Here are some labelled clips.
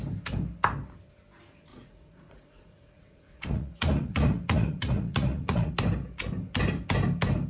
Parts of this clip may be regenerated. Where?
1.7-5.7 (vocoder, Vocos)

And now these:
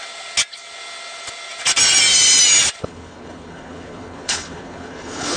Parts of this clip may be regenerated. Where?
2.8-5.4 (codec, HILCodec)

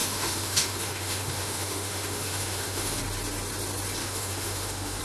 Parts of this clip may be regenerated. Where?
0.0-3.0 (autoencoder, DAC-VAE); 4.0-5.0

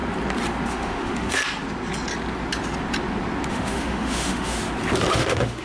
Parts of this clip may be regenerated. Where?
0.7-1.4 (autoencoder, DAC-VAE); 3.5-4.6; 5.1-5.6

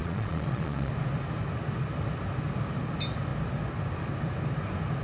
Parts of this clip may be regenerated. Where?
0.0-0.9 (vocoder, Vocos)

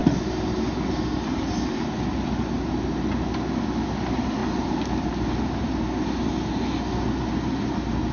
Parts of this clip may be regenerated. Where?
none